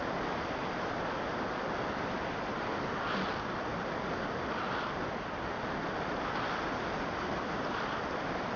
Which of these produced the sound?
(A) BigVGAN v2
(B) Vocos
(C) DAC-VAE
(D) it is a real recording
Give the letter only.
D